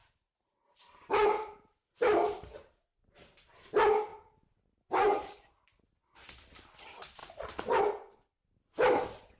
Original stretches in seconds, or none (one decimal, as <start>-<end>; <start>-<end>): 2.8-4.1; 5.8-7.2; 7.8-9.4